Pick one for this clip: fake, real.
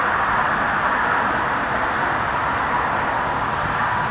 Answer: real